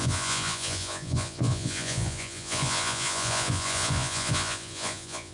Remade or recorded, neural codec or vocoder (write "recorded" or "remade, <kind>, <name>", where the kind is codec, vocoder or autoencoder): remade, vocoder, Vocos